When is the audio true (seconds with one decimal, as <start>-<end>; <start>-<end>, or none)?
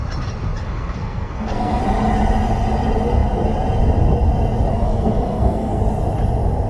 0.0-0.6; 1.8-4.7; 5.8-6.7